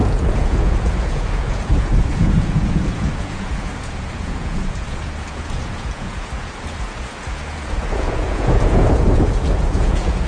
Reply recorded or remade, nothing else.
remade